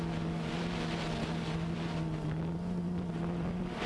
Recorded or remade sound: recorded